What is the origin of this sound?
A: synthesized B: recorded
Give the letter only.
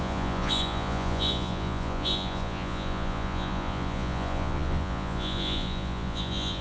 A